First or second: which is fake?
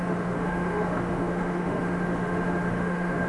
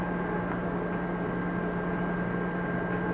first